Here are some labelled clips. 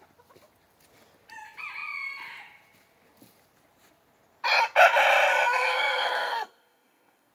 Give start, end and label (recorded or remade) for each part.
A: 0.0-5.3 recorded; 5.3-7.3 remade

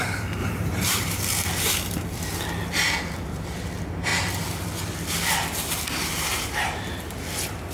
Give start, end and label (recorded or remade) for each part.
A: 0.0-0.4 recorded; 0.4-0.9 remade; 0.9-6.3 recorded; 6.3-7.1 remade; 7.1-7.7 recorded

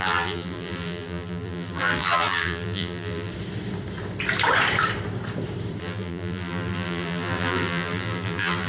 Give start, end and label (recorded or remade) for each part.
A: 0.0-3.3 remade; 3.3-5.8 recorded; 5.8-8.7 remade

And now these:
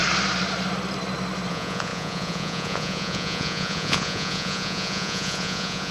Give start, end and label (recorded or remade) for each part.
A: 0.0-1.5 recorded; 1.5-5.9 remade